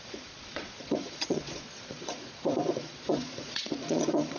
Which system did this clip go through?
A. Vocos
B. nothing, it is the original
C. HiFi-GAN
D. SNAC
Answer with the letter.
A